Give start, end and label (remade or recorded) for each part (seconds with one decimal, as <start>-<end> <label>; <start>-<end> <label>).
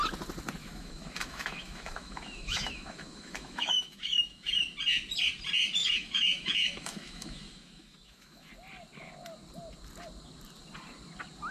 0.0-0.6 recorded; 0.6-4.6 remade; 4.6-5.8 recorded; 5.8-8.5 remade; 8.5-11.5 recorded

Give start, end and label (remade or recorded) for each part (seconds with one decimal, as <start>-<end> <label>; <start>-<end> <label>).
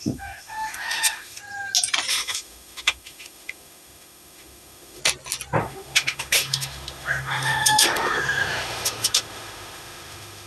0.0-1.4 remade; 1.4-2.1 recorded; 2.1-5.0 remade; 5.0-5.6 recorded; 5.6-10.5 remade